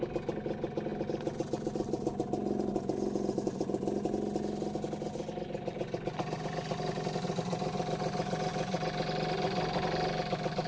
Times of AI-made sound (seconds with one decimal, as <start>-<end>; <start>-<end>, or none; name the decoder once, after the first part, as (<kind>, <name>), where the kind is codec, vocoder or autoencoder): none